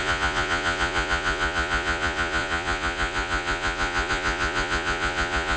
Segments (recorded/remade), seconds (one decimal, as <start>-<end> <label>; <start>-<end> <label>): 0.0-5.6 remade

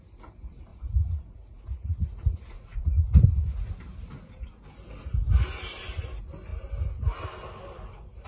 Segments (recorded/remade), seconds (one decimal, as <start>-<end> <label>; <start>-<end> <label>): 0.0-0.7 recorded; 0.7-3.7 remade; 3.7-8.3 recorded

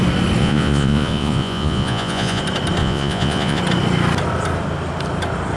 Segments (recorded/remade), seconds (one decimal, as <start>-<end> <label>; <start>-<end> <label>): 0.0-0.4 recorded; 0.4-2.4 remade; 2.4-2.8 recorded; 2.8-3.6 remade; 3.6-5.6 recorded

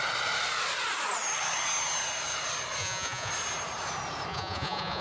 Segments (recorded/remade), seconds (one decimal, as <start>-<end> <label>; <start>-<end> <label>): 0.0-2.8 recorded; 2.8-3.3 remade; 3.3-4.3 recorded; 4.3-5.0 remade